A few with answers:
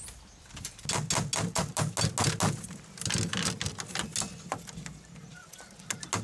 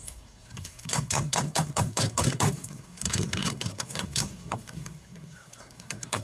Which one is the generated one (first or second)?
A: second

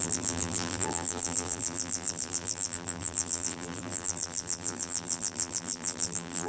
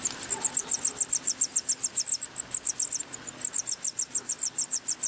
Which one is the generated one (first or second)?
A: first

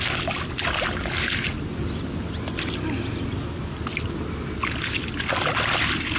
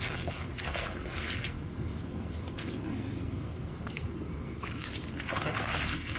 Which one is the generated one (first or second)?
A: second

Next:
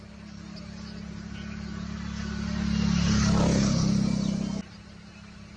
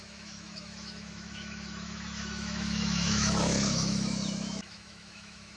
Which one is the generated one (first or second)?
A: second